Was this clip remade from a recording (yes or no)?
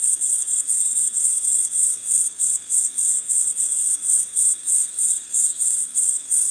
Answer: yes